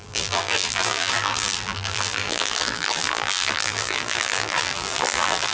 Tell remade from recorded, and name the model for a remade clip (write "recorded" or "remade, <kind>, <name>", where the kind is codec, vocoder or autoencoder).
remade, vocoder, BigVGAN v2